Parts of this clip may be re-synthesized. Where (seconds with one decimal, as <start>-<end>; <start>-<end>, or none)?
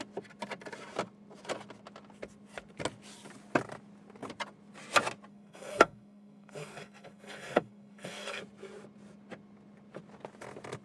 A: 5.3-8.4